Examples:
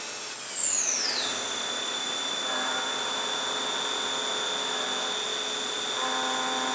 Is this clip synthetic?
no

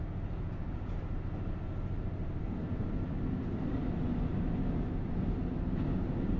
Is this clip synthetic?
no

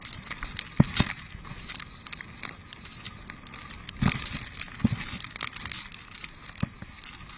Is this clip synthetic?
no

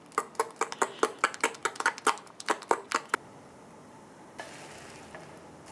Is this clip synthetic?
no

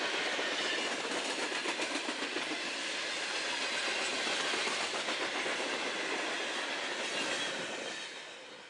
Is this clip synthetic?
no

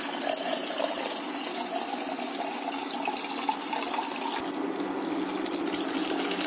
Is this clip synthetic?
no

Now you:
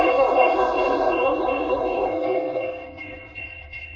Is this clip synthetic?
yes